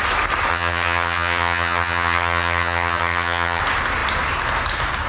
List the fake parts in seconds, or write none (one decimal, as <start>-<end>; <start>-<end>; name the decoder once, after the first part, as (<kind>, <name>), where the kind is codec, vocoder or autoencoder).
0.5-3.6 (vocoder, HiFi-GAN)